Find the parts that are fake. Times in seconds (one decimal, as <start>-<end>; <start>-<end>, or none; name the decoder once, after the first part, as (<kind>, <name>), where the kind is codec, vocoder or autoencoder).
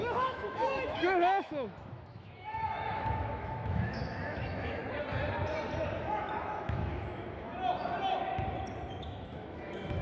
0.0-4.8 (autoencoder, DAC-VAE); 6.0-7.5; 9.0-10.0